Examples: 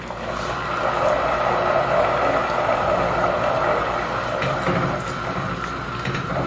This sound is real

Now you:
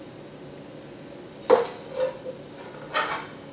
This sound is real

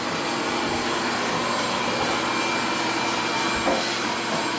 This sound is real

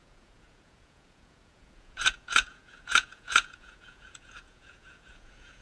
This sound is fake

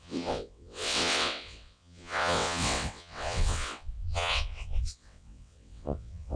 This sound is fake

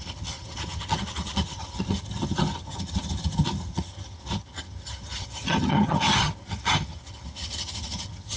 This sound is fake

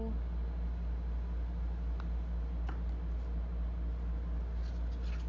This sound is real